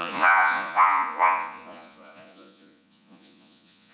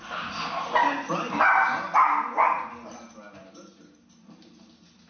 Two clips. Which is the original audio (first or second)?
second